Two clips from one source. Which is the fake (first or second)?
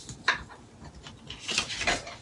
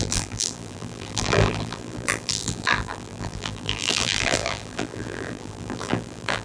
second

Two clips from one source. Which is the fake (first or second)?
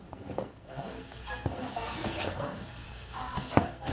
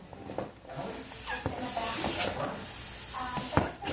first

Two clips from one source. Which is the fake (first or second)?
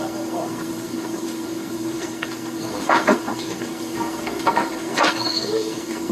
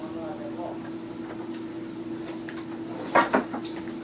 first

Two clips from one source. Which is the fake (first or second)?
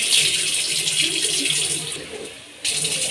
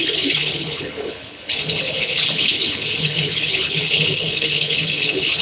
second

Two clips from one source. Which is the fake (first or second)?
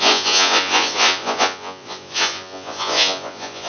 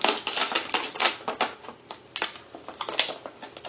first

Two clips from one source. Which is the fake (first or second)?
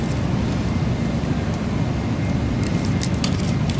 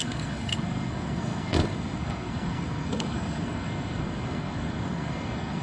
second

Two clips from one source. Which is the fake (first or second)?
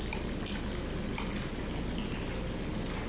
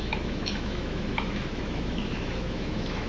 second